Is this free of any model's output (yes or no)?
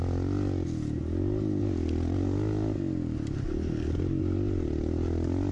yes